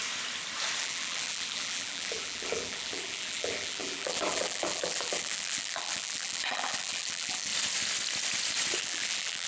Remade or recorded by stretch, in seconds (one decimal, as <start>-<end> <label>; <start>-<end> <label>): 0.0-0.8 recorded; 0.8-7.5 remade; 7.5-8.8 recorded; 8.8-9.5 remade